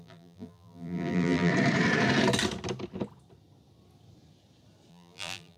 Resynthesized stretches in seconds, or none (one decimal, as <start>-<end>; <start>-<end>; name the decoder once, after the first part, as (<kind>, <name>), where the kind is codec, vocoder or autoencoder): 0.0-1.5 (vocoder, BigVGAN v2); 4.9-5.6